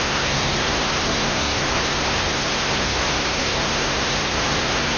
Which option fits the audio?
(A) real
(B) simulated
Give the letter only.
B